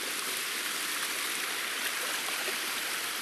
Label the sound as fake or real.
real